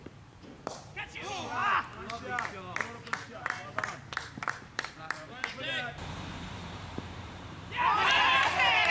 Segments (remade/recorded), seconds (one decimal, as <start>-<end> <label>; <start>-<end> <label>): 0.0-1.6 remade; 1.6-4.5 recorded; 4.5-8.9 remade